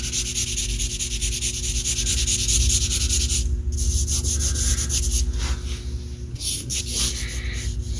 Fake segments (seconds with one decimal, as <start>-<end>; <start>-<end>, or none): 6.3-6.8